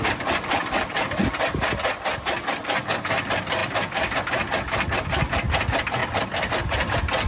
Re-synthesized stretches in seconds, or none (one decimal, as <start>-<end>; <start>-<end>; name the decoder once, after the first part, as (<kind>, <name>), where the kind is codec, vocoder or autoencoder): 3.6-4.2 (vocoder, BigVGAN v2); 6.0-6.5